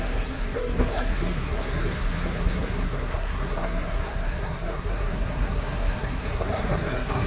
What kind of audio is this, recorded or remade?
remade